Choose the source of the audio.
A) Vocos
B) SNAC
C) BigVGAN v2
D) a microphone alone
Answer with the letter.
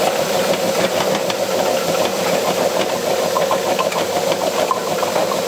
C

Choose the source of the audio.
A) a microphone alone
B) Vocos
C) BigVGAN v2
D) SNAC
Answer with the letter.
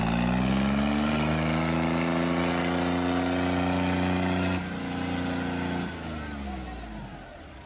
A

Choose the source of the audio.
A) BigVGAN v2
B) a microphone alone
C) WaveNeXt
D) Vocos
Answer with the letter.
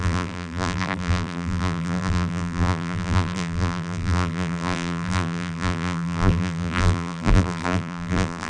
A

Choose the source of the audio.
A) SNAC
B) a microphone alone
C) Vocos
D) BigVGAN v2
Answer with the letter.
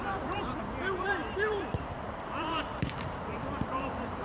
D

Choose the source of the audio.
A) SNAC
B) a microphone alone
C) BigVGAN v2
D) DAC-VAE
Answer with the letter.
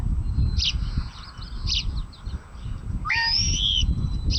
B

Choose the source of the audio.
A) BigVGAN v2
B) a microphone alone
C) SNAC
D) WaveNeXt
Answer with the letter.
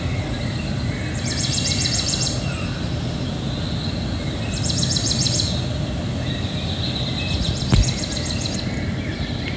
B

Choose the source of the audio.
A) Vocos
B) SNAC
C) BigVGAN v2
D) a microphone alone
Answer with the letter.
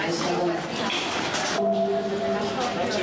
D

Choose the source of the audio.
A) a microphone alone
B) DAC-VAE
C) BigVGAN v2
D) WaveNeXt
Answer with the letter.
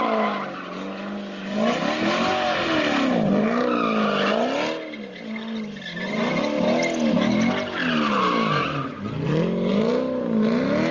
A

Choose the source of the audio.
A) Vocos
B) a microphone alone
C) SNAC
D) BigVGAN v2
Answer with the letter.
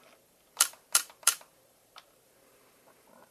D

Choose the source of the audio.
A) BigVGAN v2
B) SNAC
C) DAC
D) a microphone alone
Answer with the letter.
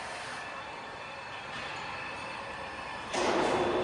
A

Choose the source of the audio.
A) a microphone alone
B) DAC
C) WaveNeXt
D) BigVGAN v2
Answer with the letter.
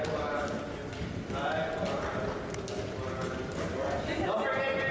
A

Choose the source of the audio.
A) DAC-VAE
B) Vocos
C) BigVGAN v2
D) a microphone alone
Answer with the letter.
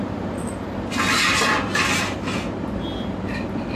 D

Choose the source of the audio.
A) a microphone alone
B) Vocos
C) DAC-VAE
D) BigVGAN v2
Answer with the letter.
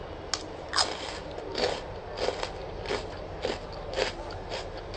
A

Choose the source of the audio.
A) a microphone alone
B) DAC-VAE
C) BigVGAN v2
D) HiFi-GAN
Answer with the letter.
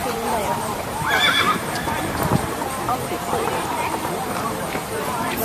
C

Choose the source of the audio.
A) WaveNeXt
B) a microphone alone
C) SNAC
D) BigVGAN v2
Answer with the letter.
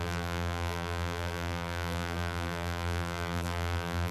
D